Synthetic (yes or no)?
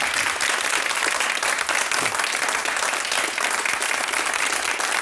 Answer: no